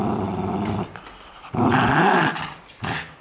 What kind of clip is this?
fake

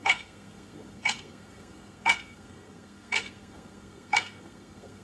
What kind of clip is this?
fake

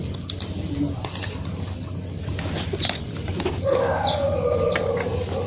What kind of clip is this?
real